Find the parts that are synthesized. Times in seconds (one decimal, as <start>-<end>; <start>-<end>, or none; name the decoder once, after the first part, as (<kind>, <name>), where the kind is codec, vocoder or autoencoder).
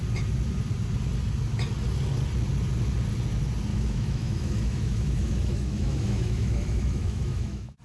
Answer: 3.7-7.8 (autoencoder, DAC-VAE)